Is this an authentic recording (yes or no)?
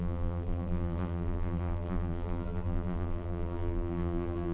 no